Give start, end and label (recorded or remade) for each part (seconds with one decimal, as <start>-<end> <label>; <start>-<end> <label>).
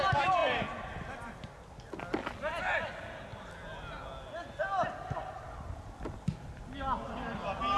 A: 0.0-7.8 recorded